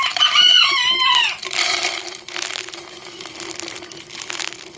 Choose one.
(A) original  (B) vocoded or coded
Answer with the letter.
A